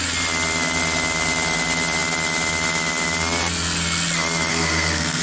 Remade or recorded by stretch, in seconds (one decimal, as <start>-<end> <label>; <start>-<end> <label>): 0.0-4.5 recorded; 4.5-5.2 remade